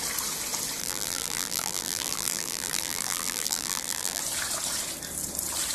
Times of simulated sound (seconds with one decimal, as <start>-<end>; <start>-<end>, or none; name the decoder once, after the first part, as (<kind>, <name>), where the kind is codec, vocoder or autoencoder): 0.8-4.2 (vocoder, BigVGAN v2)